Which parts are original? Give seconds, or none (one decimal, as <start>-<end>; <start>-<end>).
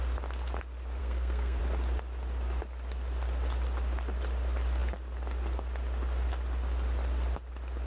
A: 0.0-1.0; 1.6-7.9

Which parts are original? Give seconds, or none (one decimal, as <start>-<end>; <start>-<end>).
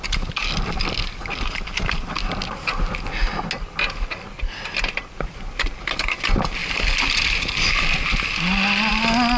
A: 0.0-9.4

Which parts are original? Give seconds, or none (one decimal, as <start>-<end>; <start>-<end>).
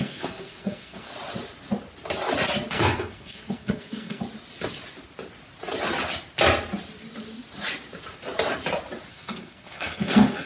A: 1.1-2.7; 4.2-9.1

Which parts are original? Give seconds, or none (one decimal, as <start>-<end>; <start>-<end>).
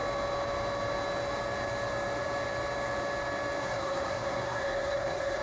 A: 0.0-3.6